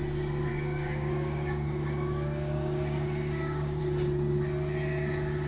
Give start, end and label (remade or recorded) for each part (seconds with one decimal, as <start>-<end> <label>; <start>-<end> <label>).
0.0-0.5 recorded; 0.5-3.8 remade; 3.8-5.5 recorded